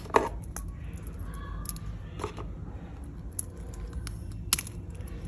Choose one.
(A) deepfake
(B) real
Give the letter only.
B